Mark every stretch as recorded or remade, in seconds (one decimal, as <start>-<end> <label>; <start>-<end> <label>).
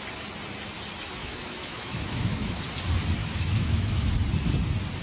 0.0-1.2 recorded; 1.2-2.6 remade; 2.6-3.2 recorded; 3.2-4.1 remade; 4.1-5.0 recorded